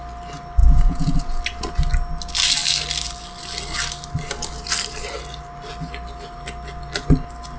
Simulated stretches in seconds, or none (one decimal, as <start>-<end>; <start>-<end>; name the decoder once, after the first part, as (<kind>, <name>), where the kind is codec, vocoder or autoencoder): 0.6-1.4 (vocoder, Vocos)